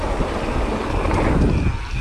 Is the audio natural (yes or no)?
yes